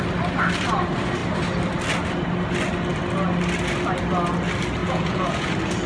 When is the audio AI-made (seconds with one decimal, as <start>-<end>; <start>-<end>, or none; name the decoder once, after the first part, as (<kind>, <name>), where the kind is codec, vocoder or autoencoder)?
4.8-5.5 (vocoder, Vocos)